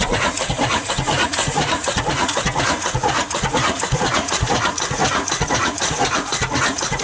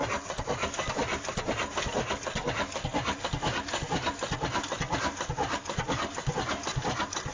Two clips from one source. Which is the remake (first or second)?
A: first